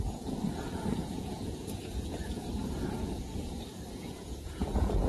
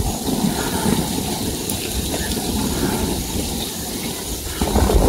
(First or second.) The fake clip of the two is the first